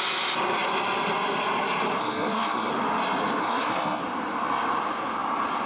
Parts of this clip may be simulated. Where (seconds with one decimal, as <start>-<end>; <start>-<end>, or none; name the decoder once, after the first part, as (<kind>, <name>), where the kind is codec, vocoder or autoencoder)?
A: 2.0-2.7 (codec, SNAC); 3.4-4.0